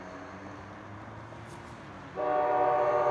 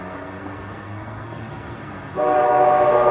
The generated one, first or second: second